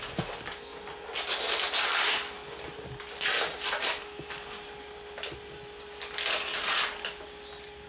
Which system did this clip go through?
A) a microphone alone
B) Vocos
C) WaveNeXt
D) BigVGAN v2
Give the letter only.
A